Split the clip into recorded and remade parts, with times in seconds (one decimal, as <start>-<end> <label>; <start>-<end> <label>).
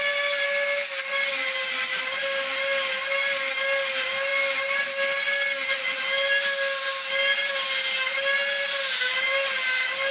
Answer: 0.0-10.1 recorded